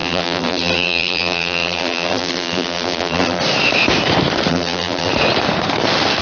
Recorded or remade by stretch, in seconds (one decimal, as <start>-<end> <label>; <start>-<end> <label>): 0.0-3.4 remade; 3.4-4.5 recorded; 4.5-5.1 remade; 5.1-6.2 recorded